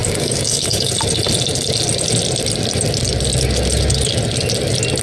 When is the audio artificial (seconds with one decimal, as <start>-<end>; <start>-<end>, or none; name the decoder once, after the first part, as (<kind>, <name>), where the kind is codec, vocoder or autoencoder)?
0.0-0.9 (codec, DAC)